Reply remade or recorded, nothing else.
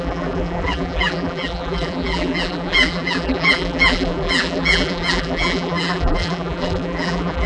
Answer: remade